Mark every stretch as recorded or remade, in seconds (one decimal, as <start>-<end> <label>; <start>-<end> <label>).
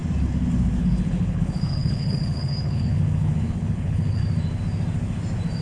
0.0-0.8 recorded; 0.8-4.2 remade; 4.2-5.6 recorded